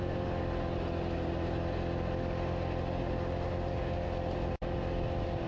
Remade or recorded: recorded